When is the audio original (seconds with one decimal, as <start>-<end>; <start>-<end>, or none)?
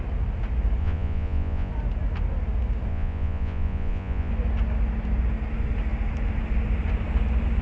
0.0-0.8; 1.7-2.9; 4.3-7.6